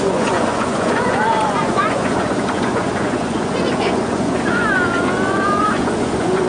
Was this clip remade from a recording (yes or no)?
yes